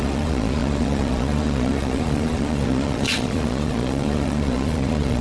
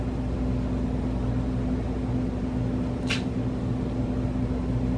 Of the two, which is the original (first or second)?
second